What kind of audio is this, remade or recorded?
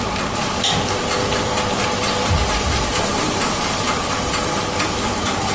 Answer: recorded